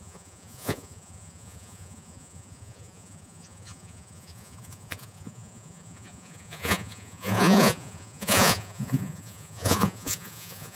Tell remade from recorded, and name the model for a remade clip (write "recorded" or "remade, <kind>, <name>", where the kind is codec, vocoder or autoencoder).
remade, vocoder, Vocos